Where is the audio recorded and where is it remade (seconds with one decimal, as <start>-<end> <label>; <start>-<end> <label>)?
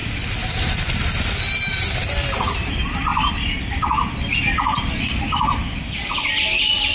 0.0-6.9 recorded